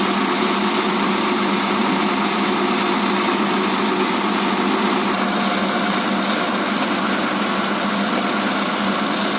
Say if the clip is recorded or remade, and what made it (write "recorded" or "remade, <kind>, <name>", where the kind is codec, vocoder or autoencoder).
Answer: recorded